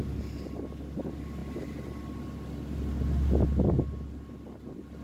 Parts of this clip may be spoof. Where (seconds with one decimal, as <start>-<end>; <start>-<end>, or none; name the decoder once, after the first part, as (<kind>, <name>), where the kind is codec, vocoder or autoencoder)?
none

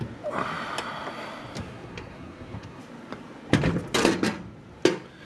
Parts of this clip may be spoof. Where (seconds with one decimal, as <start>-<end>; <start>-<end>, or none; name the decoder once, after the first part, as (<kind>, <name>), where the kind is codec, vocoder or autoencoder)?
1.6-2.8 (codec, SNAC)

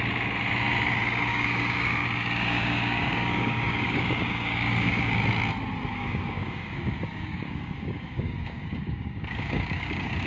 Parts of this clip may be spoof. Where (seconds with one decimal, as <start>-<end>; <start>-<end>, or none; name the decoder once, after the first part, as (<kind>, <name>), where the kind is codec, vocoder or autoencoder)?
1.3-5.2 (codec, DAC); 5.9-10.3

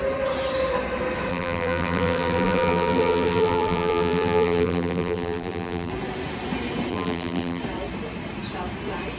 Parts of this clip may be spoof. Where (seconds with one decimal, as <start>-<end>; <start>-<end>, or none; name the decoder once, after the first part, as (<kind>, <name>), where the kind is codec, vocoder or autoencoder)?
1.3-5.9 (vocoder, BigVGAN v2); 6.9-7.6

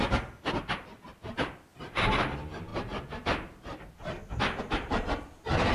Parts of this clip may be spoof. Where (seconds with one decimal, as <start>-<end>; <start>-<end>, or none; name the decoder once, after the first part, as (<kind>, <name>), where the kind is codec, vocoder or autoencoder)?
none

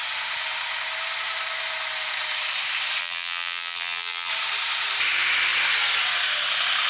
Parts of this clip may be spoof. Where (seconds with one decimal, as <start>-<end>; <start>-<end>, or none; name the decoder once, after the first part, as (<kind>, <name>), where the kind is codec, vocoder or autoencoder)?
3.0-4.3 (vocoder, BigVGAN v2)